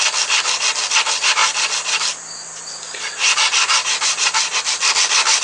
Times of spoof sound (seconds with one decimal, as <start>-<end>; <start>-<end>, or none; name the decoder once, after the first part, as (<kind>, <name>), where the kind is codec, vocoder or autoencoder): none